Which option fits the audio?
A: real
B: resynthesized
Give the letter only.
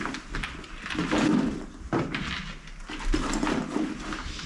A